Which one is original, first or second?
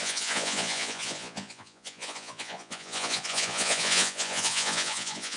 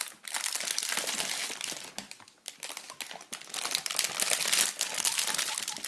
second